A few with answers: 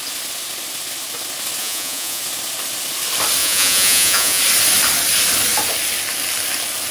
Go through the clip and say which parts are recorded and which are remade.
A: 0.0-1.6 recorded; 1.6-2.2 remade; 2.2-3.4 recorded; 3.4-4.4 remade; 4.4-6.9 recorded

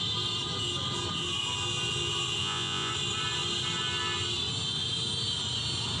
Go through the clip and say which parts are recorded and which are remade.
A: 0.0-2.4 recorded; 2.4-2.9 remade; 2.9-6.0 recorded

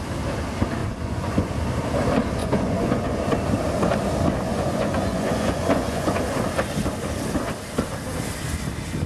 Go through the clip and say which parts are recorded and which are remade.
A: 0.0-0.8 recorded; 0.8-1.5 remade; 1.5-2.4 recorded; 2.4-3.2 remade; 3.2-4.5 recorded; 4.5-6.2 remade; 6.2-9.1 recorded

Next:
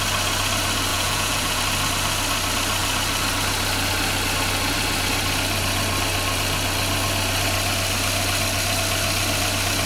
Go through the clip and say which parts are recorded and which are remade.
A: 0.0-0.9 recorded; 0.9-1.6 remade; 1.6-9.9 recorded

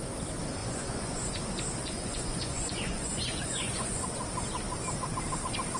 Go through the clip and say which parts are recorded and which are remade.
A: 0.0-0.6 recorded; 0.6-1.4 remade; 1.4-1.8 recorded; 1.8-4.2 remade; 4.2-5.8 recorded